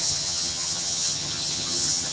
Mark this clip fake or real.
fake